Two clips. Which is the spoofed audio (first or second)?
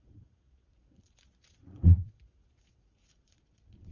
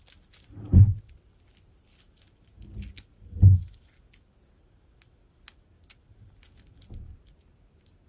first